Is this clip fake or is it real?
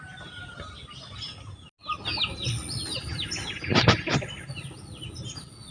real